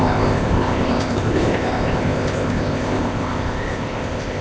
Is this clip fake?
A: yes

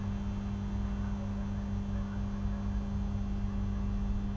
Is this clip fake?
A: no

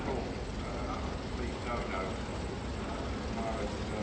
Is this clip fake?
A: no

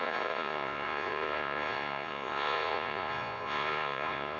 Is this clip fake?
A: yes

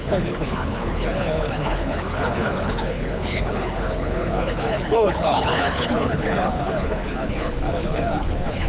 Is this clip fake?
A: yes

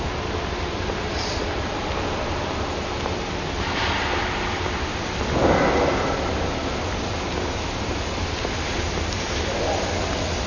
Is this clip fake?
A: no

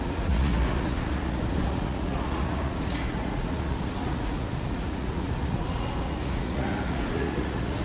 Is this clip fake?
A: yes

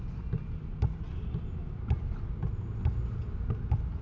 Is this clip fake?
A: no